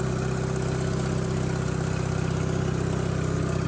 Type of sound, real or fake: real